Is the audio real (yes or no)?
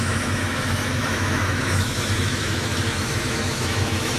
no